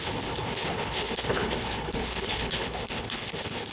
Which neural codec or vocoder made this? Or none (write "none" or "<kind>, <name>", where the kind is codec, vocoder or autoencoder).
codec, HILCodec